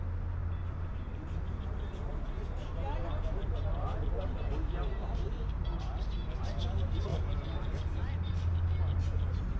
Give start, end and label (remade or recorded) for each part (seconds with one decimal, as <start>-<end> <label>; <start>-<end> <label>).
0.0-9.6 recorded